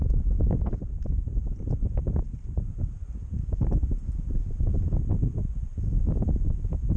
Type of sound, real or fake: real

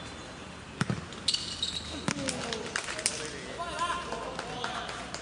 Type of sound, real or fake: real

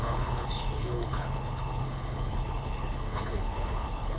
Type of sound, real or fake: fake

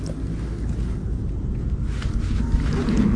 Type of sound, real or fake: real